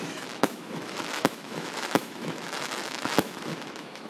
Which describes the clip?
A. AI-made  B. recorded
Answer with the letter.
A